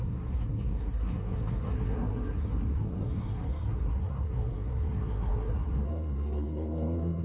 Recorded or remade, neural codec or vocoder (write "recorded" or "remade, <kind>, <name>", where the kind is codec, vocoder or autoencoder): remade, codec, SNAC